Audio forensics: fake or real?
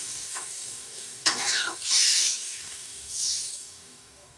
fake